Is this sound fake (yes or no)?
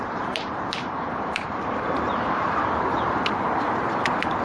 yes